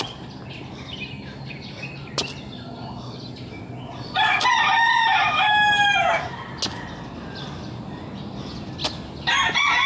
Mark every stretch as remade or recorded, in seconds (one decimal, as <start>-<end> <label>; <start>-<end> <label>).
0.0-9.9 recorded